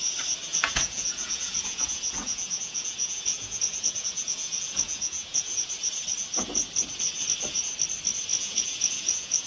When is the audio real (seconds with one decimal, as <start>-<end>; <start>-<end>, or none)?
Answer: 0.0-0.5; 5.7-8.3